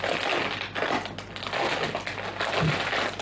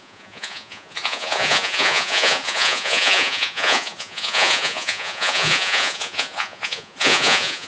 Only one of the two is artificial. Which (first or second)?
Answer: second